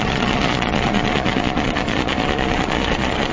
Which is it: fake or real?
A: fake